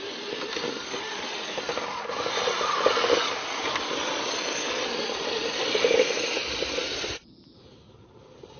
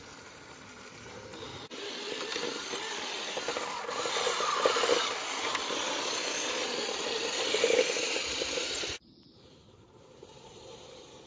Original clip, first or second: first